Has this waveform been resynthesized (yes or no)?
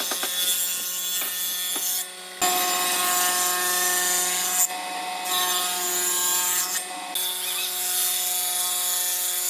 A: no